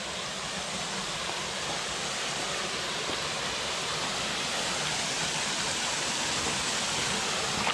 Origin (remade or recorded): recorded